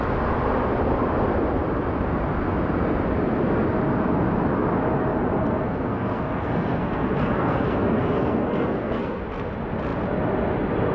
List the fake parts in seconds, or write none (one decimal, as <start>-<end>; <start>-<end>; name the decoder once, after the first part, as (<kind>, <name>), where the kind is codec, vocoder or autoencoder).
5.4-9.2 (codec, SNAC)